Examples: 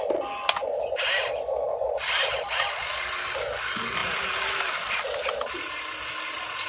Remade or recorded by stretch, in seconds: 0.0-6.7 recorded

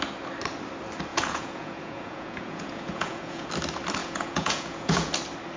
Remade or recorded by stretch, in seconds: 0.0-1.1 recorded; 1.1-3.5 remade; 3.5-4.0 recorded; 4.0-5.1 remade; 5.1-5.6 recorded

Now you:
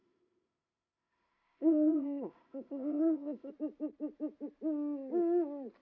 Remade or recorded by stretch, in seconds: 0.0-3.5 remade; 3.5-5.8 recorded